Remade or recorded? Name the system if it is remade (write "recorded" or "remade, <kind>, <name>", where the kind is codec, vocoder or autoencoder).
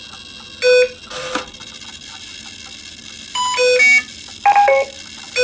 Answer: recorded